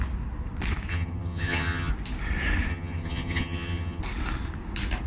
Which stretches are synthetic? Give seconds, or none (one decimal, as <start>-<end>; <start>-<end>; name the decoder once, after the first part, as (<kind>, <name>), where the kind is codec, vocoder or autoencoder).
0.9-1.9 (vocoder, HiFi-GAN); 2.7-4.0